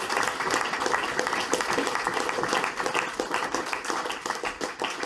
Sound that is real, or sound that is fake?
real